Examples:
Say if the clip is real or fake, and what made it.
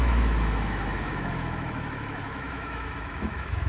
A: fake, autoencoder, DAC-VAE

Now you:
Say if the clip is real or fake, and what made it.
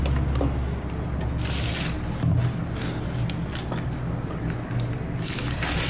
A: real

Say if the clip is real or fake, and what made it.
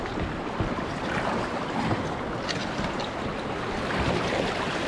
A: real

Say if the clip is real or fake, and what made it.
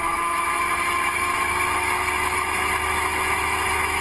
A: fake, autoencoder, DAC-VAE